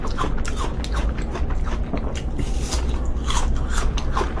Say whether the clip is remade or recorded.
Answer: recorded